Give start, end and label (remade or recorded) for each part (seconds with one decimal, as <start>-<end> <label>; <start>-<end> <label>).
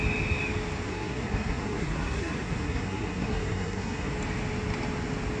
0.0-0.9 recorded; 0.9-4.1 remade; 4.1-5.4 recorded